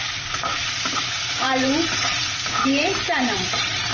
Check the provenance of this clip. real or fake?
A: fake